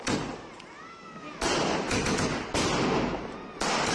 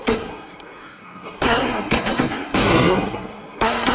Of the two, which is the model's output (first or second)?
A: second